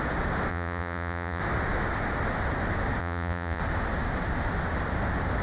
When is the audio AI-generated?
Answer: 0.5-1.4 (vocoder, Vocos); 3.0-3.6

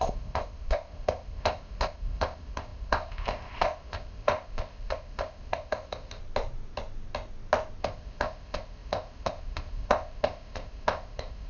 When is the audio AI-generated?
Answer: 0.0-6.2 (codec, ZipCodec); 7.8-11.5

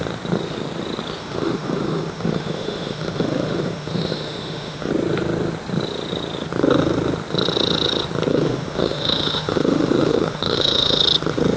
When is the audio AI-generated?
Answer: 1.2-4.9 (autoencoder, DAC-VAE); 8.3-11.0

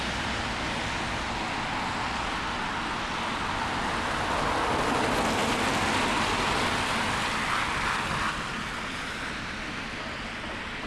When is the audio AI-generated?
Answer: 5.4-6.2 (vocoder, BigVGAN v2)

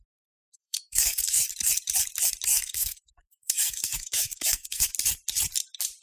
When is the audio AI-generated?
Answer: 0.5-1.4 (codec, SNAC); 2.5-4.9